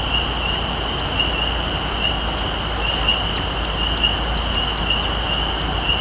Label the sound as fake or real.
real